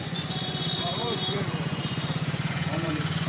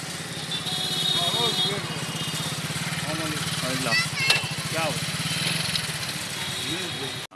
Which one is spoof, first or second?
first